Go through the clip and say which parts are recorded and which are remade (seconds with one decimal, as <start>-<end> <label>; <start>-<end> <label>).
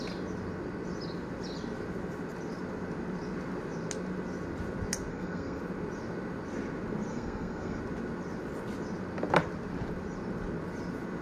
0.0-5.1 recorded; 5.1-5.6 remade; 5.6-7.1 recorded; 7.1-7.8 remade; 7.8-11.2 recorded